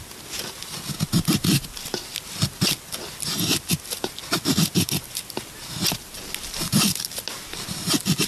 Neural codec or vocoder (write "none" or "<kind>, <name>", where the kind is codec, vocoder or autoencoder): none